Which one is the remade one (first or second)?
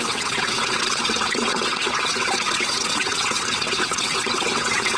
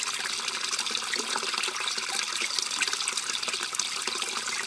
first